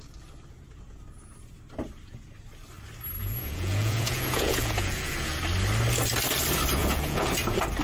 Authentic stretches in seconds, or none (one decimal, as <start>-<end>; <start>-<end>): 0.0-3.2; 5.4-6.8; 7.3-7.8